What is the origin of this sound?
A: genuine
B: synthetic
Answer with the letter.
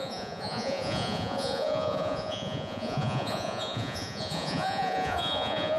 B